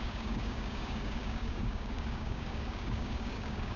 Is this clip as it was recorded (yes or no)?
no